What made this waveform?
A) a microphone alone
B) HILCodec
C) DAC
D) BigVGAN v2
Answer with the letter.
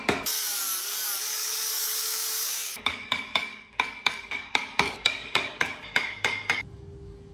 C